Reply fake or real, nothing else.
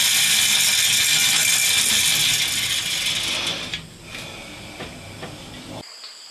real